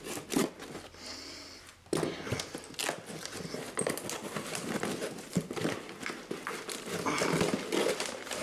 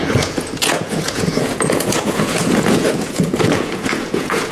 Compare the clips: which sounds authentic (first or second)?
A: first